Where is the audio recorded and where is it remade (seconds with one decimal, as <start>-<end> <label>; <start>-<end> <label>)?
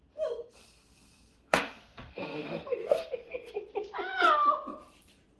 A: 0.0-0.4 recorded; 0.4-3.6 remade; 3.6-5.4 recorded